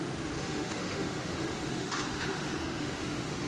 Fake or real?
fake